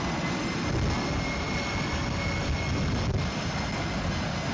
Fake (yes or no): no